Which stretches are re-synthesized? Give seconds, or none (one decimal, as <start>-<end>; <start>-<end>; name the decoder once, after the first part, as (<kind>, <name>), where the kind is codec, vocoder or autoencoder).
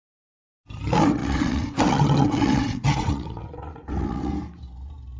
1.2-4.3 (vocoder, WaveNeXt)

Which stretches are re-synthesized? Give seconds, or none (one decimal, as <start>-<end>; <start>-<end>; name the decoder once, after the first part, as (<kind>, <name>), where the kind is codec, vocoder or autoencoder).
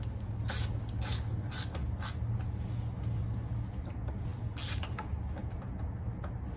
none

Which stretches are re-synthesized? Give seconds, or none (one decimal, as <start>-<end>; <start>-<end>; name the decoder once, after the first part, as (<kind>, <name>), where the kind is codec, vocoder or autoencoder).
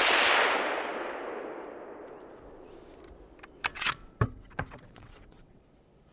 3.7-5.6 (vocoder, WaveNeXt)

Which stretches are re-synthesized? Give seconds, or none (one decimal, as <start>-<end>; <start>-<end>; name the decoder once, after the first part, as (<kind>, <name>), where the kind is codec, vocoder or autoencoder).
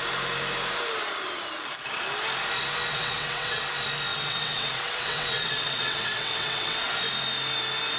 2.9-3.6 (vocoder, WaveNeXt); 4.1-6.9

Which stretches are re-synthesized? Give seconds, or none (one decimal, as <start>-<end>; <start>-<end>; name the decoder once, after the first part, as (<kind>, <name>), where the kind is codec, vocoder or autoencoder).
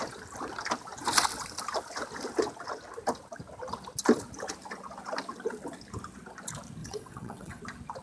6.8-7.6 (vocoder, WaveNeXt)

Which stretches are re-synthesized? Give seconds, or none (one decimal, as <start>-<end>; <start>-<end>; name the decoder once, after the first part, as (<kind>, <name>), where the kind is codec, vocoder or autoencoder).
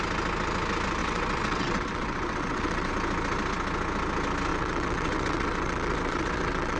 1.0-2.9 (vocoder, WaveNeXt); 4.5-6.8